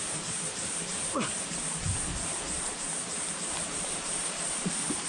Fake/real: fake